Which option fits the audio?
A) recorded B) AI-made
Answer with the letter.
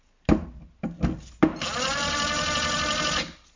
A